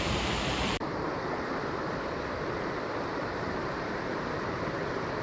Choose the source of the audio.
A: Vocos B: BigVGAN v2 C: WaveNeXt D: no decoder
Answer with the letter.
B